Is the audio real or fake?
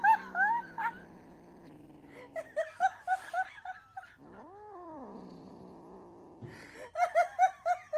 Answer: fake